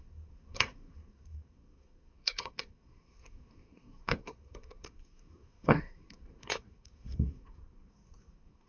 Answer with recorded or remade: remade